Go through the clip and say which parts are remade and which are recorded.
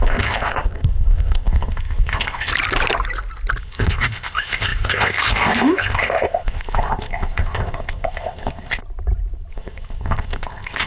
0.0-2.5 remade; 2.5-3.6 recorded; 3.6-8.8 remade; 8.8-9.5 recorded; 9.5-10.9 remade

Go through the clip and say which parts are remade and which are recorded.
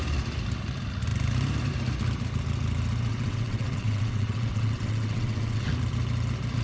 0.0-3.1 recorded; 3.1-5.7 remade; 5.7-6.6 recorded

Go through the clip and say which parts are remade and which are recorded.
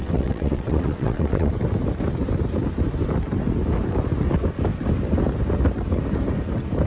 0.0-1.5 remade; 1.5-6.9 recorded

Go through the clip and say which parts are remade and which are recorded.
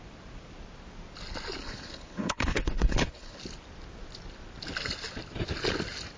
0.0-1.6 recorded; 1.6-3.4 remade; 3.4-6.2 recorded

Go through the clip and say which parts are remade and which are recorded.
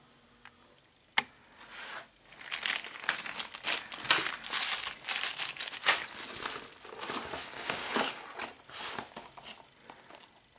0.0-7.4 recorded; 7.4-8.2 remade; 8.2-10.6 recorded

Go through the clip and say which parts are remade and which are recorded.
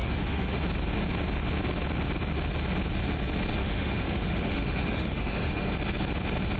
0.0-0.6 remade; 0.6-3.6 recorded; 3.6-5.7 remade; 5.7-6.6 recorded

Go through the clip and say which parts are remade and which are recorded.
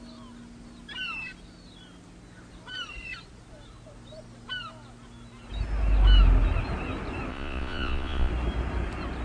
0.0-7.3 recorded; 7.3-8.3 remade; 8.3-9.2 recorded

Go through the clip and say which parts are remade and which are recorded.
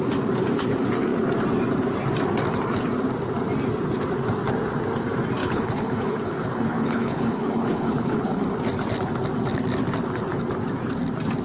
0.0-5.4 recorded; 5.4-8.4 remade; 8.4-11.4 recorded